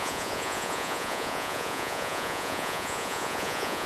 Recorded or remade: remade